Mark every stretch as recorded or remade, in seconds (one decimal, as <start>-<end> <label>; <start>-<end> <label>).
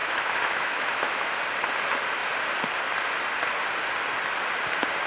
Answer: 0.0-1.4 remade; 1.4-5.1 recorded